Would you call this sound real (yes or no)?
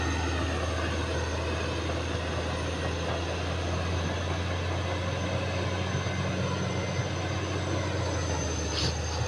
yes